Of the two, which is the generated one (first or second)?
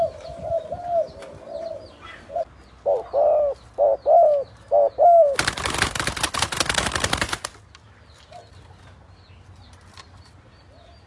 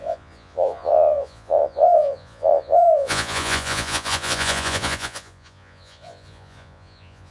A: second